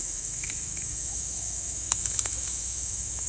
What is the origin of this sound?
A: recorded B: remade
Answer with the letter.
B